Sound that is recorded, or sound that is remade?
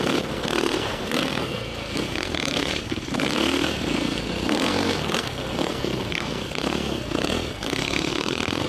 remade